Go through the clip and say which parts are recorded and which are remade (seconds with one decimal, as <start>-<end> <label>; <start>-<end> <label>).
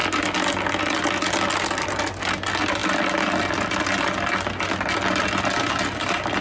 0.0-6.4 recorded